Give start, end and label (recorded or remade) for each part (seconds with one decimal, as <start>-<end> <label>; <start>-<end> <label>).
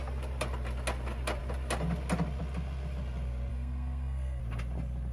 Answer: 0.0-3.5 recorded; 3.5-4.4 remade; 4.4-5.1 recorded